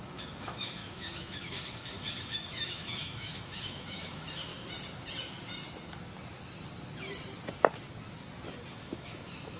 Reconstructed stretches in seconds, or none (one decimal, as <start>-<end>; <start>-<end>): 0.0-4.5; 8.7-9.6